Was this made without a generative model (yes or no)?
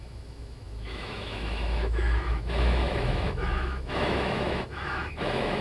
no